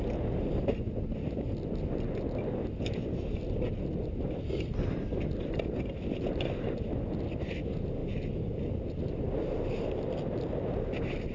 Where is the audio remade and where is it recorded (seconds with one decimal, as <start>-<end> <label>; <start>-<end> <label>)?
0.0-11.3 recorded